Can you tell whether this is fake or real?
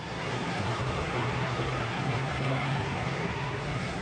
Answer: fake